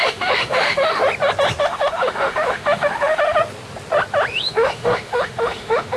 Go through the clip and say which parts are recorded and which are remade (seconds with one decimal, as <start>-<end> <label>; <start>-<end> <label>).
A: 0.0-1.0 remade; 1.0-1.6 recorded; 1.6-3.4 remade; 3.4-4.3 recorded; 4.3-6.0 remade